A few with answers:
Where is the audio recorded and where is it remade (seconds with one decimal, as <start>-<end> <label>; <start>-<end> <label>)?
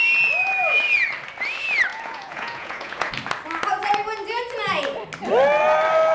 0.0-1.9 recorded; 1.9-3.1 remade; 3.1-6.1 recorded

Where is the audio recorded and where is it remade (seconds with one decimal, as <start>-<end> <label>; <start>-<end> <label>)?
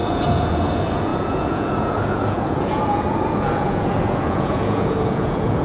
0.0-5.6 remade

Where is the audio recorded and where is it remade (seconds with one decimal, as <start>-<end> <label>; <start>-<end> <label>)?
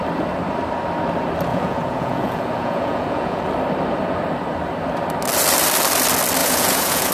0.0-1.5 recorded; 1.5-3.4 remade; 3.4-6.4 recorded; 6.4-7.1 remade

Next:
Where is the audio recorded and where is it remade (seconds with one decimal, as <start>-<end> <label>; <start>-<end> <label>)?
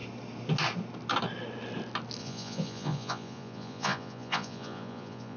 0.0-2.2 recorded; 2.2-5.4 remade